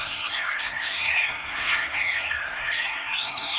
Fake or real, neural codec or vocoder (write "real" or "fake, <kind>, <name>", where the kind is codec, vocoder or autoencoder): fake, codec, SNAC